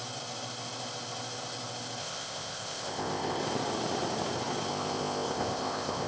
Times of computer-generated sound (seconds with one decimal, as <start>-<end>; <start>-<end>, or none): 2.0-3.4; 4.7-6.1